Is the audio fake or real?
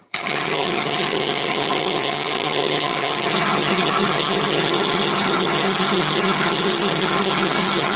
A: fake